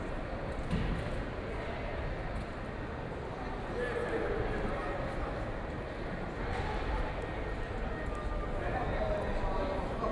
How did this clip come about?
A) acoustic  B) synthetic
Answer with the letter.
A